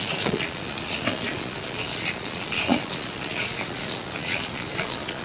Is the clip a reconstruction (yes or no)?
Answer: yes